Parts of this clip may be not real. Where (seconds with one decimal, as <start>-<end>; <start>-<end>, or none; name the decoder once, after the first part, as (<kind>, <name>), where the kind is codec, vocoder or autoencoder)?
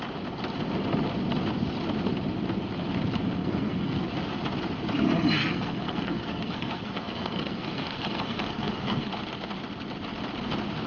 3.4-4.1 (codec, SNAC); 5.4-9.1